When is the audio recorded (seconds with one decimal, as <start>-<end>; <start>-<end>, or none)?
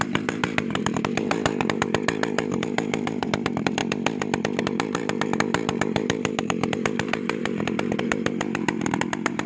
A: 3.8-4.6